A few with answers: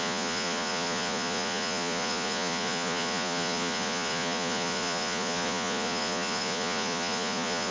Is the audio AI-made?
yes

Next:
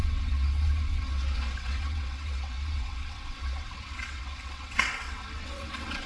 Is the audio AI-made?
yes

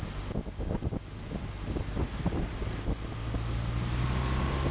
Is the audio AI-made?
no